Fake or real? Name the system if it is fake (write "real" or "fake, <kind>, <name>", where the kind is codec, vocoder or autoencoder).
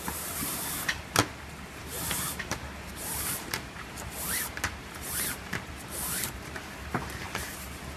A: fake, vocoder, BigVGAN v2